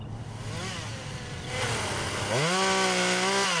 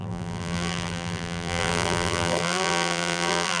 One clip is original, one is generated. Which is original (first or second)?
first